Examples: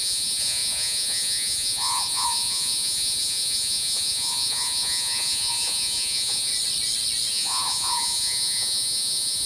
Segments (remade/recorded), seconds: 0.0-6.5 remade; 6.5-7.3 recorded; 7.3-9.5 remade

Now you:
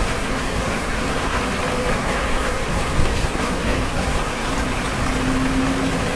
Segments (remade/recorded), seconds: 0.0-1.4 remade; 1.4-1.9 recorded; 1.9-4.5 remade; 4.5-6.2 recorded

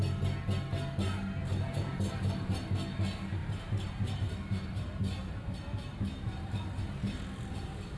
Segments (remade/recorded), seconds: 0.0-1.4 recorded; 1.4-2.2 remade; 2.2-3.4 recorded; 3.4-8.0 remade

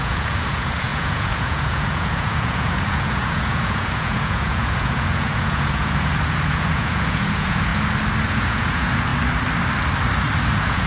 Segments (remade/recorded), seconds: 0.0-7.7 remade; 7.7-8.3 recorded; 8.3-9.1 remade; 9.1-10.5 recorded; 10.5-10.9 remade